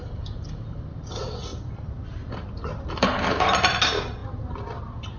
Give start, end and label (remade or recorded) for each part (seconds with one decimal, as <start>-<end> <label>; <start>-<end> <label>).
0.0-1.1 remade; 1.1-1.5 recorded; 1.5-3.8 remade; 3.8-5.2 recorded